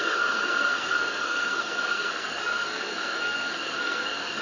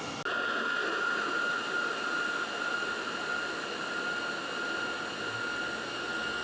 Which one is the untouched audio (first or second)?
second